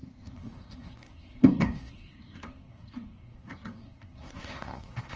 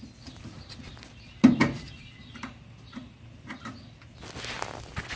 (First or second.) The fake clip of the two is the first